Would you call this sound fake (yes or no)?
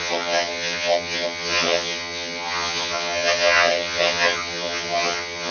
yes